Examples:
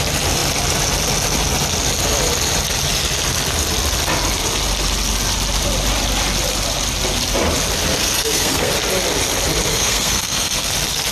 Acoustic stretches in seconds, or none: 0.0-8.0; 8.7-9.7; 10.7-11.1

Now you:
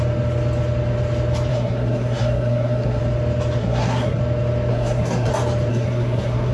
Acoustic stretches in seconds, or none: 0.0-1.5; 3.0-3.6; 4.2-4.7; 5.3-5.7